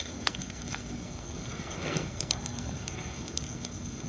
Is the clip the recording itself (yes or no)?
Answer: no